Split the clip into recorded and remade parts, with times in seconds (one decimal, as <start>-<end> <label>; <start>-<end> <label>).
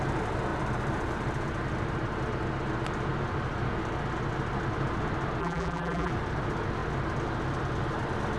0.0-5.4 recorded; 5.4-6.1 remade; 6.1-8.4 recorded